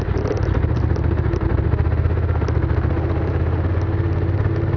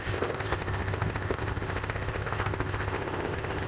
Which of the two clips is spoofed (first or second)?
second